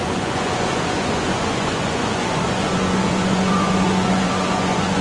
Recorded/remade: remade